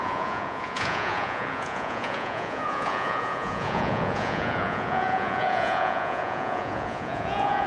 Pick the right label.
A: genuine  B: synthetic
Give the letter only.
B